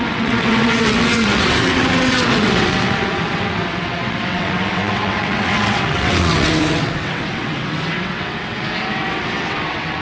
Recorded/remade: remade